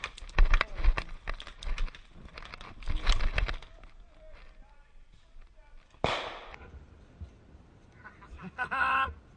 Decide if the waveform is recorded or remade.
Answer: recorded